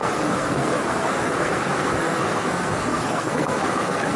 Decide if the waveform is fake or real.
fake